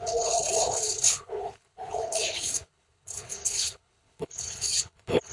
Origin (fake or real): fake